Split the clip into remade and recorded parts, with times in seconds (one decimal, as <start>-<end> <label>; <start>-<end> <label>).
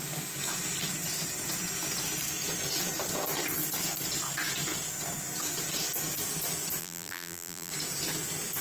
0.0-6.8 recorded; 6.8-7.7 remade; 7.7-8.6 recorded